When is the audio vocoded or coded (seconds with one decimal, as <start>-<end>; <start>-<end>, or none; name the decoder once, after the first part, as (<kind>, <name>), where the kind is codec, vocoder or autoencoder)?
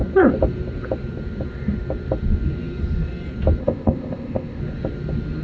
3.6-4.6 (codec, ZipCodec)